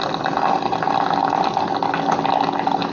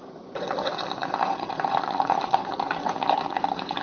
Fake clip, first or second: second